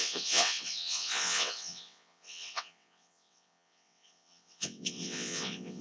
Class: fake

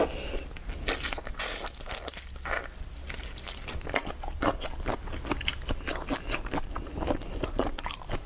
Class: real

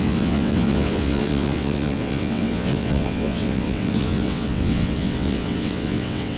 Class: fake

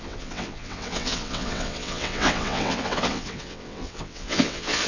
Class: fake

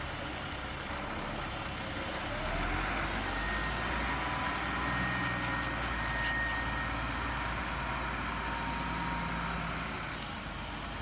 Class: real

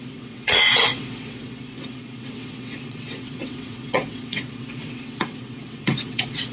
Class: fake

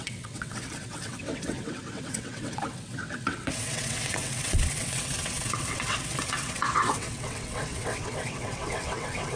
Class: fake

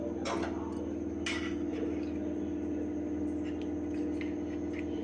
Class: real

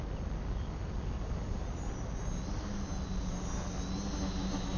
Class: real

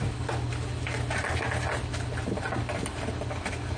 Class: real